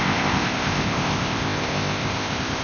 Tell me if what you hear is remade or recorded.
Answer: remade